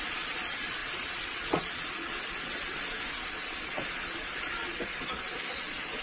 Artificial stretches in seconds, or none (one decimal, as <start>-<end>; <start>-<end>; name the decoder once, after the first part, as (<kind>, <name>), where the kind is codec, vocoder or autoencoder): 0.0-6.0 (vocoder, Vocos)